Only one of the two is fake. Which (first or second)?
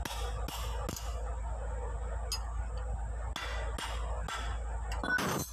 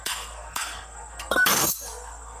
second